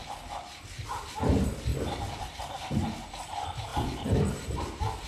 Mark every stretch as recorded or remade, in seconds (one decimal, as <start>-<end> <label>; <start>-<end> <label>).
0.0-0.6 remade; 0.6-1.7 recorded; 1.7-2.4 remade; 2.4-3.7 recorded; 3.7-4.6 remade; 4.6-5.1 recorded